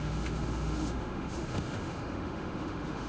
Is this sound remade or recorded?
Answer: remade